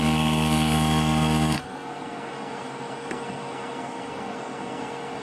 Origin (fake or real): fake